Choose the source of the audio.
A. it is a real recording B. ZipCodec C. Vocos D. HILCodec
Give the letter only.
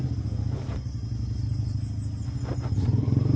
A